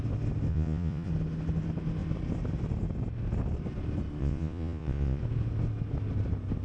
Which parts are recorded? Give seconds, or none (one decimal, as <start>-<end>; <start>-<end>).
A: 0.0-0.5; 1.1-4.2; 5.2-6.6